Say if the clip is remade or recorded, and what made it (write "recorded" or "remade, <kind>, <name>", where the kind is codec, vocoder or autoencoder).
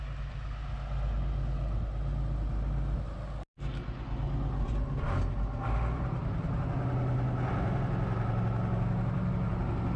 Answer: recorded